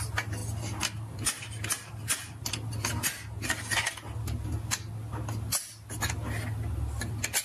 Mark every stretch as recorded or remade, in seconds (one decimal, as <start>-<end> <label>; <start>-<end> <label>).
0.0-7.4 recorded